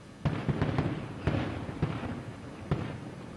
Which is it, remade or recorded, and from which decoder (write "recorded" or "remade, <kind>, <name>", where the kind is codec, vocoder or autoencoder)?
recorded